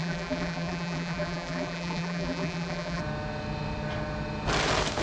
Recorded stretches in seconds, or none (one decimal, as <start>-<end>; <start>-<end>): 3.0-5.0